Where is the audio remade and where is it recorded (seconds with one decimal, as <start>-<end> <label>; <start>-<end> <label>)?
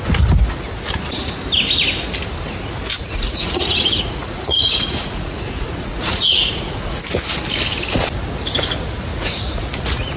0.0-2.9 recorded; 2.9-7.0 remade; 7.0-9.1 recorded; 9.1-10.2 remade